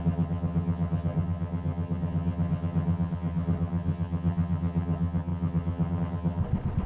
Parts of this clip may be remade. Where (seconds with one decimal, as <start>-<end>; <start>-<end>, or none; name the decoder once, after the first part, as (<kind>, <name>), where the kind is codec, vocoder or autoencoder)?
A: 0.0-6.4 (vocoder, HiFi-GAN)